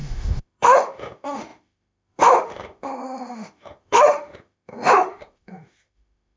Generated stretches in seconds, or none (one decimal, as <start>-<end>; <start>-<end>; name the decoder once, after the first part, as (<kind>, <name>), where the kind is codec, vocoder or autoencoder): 0.0-6.4 (autoencoder, DAC-VAE)